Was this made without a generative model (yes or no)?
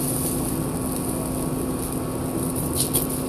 yes